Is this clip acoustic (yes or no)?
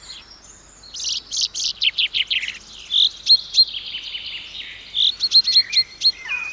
yes